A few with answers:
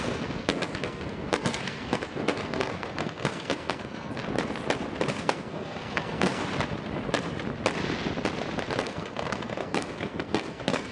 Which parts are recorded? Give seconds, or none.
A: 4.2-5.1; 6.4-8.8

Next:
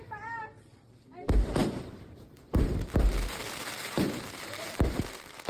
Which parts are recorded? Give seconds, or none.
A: none

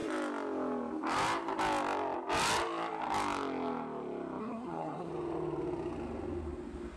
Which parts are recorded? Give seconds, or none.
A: 0.0-4.4; 5.1-7.0

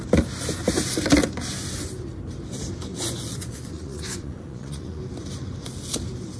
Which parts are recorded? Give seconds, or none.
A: 0.0-2.9; 5.0-6.4